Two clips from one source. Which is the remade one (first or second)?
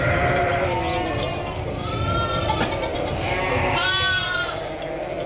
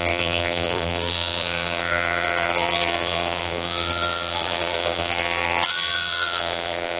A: second